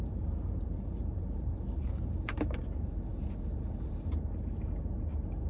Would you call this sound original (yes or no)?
no